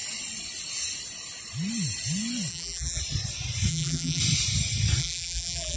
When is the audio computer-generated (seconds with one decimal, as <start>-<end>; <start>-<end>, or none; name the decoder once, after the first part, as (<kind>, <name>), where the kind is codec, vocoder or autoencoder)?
2.5-3.0 (vocoder, BigVGAN v2); 3.7-4.2; 5.0-5.8